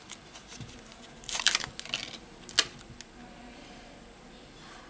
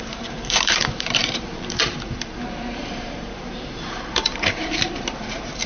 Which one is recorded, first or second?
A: first